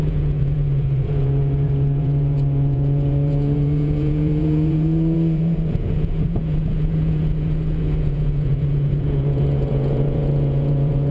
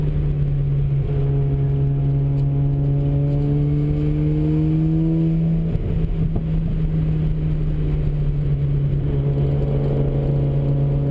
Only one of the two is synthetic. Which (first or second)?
first